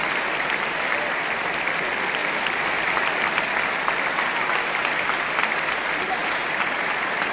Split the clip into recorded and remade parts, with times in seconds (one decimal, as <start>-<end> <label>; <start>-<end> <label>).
0.0-6.2 recorded; 6.2-7.3 remade